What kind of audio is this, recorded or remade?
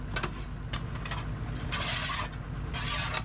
recorded